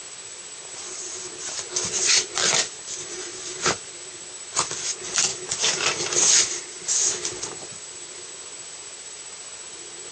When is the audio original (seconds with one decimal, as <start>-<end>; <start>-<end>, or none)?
0.0-3.3; 4.7-5.3; 8.3-10.1